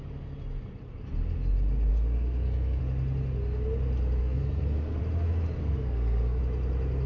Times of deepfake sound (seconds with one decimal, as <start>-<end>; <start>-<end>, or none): 1.9-2.8; 4.2-5.0; 5.6-6.4